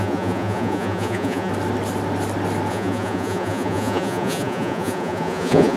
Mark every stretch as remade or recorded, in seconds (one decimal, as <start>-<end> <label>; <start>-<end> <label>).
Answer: 0.0-1.5 remade; 1.5-2.7 recorded; 2.7-5.8 remade